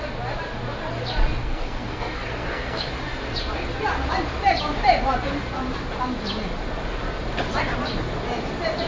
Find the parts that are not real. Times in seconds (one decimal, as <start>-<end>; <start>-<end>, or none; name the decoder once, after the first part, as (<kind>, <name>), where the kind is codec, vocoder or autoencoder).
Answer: 1.4-2.9 (codec, SNAC)